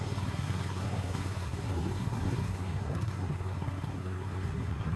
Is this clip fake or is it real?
fake